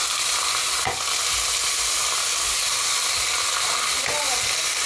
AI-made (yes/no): no